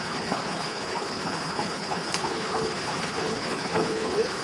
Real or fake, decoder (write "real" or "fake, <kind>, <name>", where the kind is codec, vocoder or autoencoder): fake, codec, HILCodec